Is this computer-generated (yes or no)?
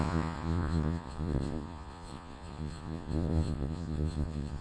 yes